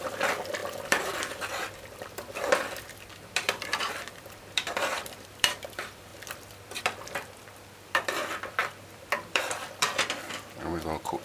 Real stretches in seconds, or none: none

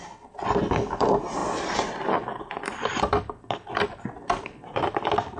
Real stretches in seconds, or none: 0.0-1.4; 3.5-5.4